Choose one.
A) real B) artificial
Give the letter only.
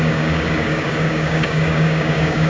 B